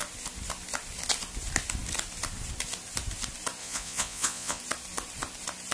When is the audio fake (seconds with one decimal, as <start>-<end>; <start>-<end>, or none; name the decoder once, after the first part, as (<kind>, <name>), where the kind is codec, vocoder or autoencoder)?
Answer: 3.6-4.6 (vocoder, Vocos)

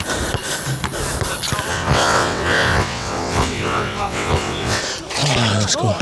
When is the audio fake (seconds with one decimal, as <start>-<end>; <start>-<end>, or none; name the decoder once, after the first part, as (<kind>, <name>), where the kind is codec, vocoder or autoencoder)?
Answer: 1.7-4.8 (vocoder, WaveNeXt)

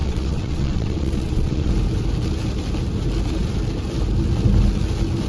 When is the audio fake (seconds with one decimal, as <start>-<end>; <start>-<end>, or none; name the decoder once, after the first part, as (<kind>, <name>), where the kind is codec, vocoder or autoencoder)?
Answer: 0.0-1.7 (vocoder, WaveNeXt)